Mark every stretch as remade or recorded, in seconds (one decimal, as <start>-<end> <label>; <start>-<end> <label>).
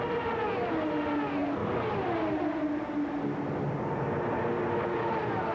0.0-5.5 recorded